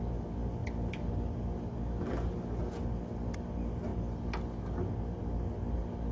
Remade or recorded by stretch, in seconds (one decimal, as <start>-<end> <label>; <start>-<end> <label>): 0.0-6.1 recorded